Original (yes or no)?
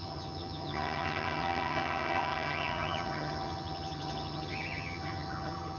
no